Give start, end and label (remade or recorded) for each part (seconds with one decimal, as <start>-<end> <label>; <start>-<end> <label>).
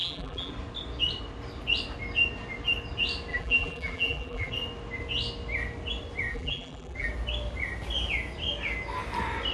0.0-0.5 remade; 0.5-3.3 recorded; 3.3-4.5 remade; 4.5-6.3 recorded; 6.3-7.1 remade; 7.1-9.5 recorded